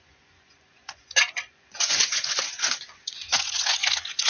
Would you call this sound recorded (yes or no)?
no